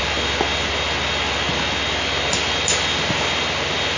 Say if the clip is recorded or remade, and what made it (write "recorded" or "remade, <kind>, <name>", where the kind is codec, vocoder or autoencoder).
recorded